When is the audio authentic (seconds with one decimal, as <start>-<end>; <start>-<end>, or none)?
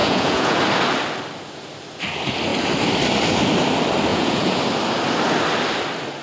0.6-4.1; 4.6-6.2